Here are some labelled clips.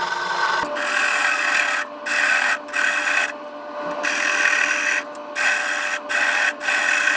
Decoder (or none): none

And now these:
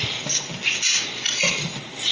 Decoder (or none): none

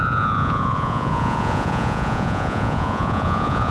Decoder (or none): vocoder, Vocos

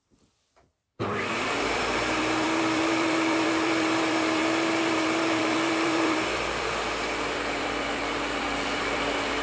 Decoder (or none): vocoder, BigVGAN v2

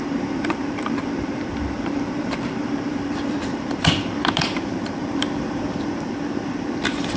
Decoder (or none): vocoder, BigVGAN v2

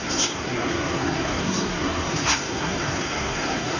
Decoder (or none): codec, SNAC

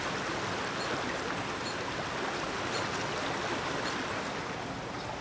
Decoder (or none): none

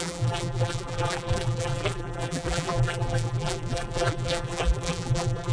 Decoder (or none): vocoder, BigVGAN v2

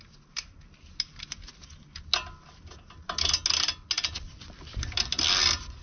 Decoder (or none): none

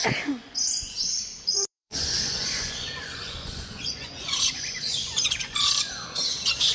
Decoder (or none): vocoder, Vocos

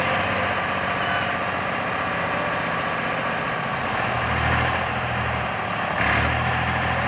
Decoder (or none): none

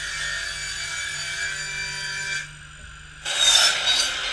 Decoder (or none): none